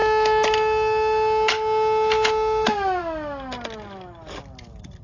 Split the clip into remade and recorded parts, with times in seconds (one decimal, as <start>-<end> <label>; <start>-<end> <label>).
0.0-5.0 recorded